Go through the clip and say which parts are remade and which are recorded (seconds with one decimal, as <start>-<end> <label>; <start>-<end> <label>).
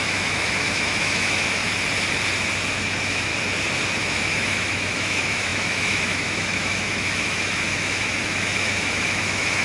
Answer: 0.0-1.6 remade; 1.6-2.7 recorded; 2.7-3.3 remade; 3.3-4.0 recorded; 4.0-9.6 remade